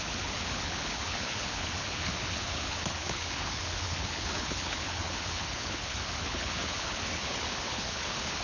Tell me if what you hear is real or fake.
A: fake